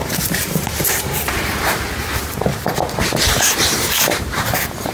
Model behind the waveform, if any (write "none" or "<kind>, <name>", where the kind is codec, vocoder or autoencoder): vocoder, BigVGAN v2